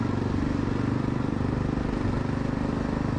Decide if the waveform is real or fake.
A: real